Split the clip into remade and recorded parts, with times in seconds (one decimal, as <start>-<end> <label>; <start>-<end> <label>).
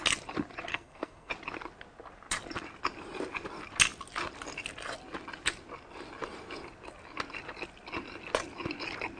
0.0-0.7 recorded; 0.7-1.3 remade; 1.3-9.2 recorded